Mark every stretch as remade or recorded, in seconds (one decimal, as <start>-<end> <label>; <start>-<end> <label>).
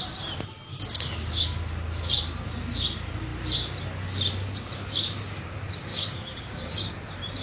0.0-0.7 recorded; 0.7-1.6 remade; 1.6-5.9 recorded; 5.9-6.9 remade; 6.9-7.4 recorded